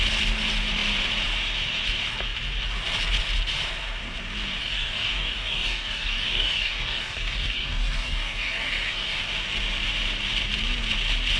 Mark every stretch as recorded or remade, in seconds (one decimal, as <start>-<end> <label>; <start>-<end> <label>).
0.0-4.6 recorded; 4.6-9.3 remade; 9.3-11.4 recorded